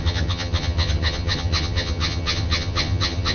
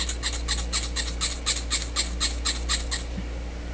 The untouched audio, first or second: second